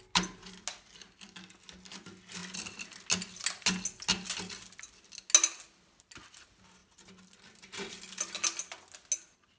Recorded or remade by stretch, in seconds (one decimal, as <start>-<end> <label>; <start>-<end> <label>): 0.0-9.6 recorded